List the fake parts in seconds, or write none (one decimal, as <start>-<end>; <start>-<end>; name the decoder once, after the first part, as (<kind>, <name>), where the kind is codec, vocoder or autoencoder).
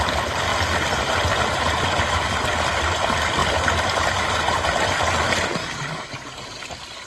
5.6-6.4 (codec, DAC)